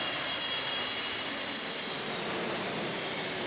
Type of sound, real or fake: real